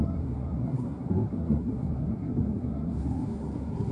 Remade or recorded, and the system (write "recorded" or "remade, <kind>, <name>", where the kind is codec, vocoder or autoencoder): remade, codec, SNAC